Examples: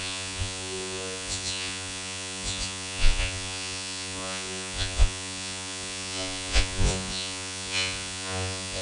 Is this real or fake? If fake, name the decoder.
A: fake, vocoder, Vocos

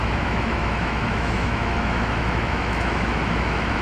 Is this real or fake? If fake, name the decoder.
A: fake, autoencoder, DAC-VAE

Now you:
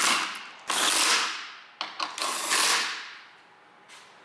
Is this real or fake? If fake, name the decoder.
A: real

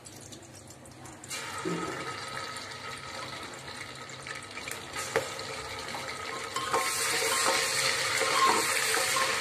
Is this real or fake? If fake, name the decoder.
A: real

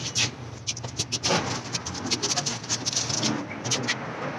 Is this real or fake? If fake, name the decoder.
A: real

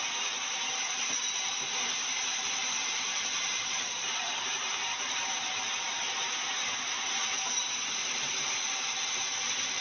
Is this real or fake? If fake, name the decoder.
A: fake, vocoder, BigVGAN v2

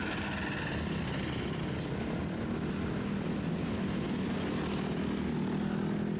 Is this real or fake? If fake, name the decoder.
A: real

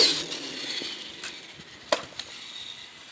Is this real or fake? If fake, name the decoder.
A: real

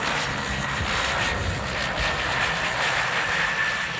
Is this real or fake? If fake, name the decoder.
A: real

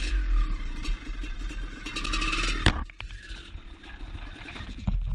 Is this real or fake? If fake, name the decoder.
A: real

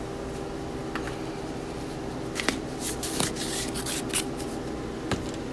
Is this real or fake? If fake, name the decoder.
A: real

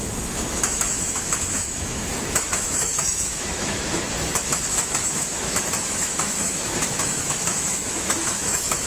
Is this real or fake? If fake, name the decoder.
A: fake, autoencoder, DAC-VAE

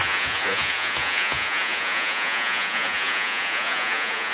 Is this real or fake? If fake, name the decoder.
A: fake, vocoder, Vocos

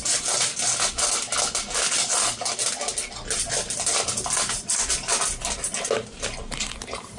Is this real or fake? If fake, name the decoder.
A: real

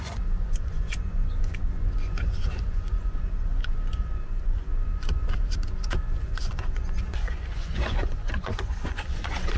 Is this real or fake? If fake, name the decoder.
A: fake, vocoder, Vocos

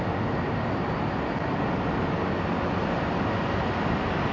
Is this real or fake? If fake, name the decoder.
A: real